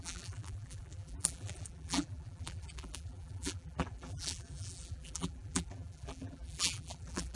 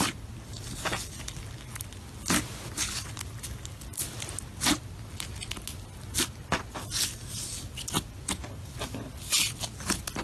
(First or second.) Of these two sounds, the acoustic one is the second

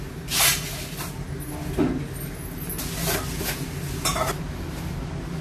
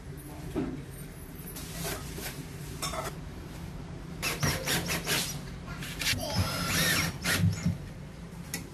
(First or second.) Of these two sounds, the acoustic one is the first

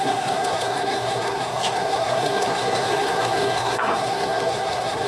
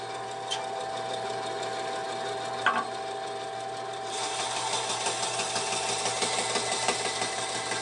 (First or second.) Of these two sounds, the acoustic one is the second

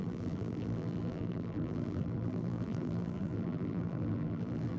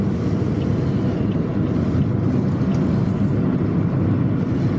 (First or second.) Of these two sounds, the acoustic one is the second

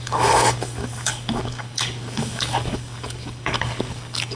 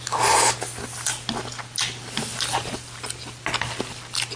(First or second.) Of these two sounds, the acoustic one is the second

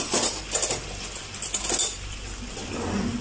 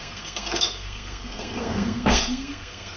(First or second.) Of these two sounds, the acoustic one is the first